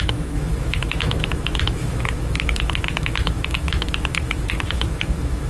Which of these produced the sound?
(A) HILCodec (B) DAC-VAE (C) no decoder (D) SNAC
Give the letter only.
B